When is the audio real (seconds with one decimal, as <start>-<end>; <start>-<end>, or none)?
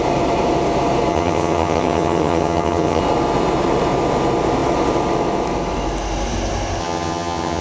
0.0-1.1; 3.0-6.8